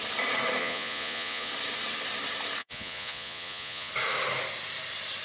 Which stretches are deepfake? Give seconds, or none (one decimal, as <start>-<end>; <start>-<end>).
0.6-1.5; 2.6-3.9